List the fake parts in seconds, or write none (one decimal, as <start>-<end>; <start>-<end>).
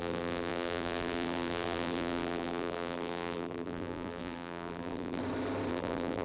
0.0-5.2; 5.7-6.2